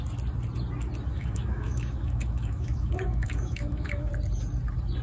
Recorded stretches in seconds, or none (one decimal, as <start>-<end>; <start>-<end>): 0.0-1.1; 4.1-5.0